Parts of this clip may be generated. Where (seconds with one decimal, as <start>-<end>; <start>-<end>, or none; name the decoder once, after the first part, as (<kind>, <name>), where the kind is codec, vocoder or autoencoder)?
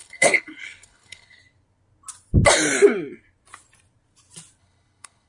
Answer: 0.0-1.4 (codec, HILCodec); 4.6-5.3